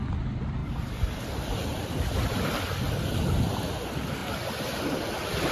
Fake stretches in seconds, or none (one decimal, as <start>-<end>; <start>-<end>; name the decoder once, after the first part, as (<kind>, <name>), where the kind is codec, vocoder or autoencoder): 0.6-2.6 (vocoder, BigVGAN v2)